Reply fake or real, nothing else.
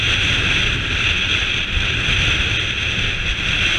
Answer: real